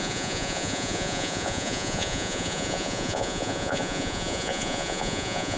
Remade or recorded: remade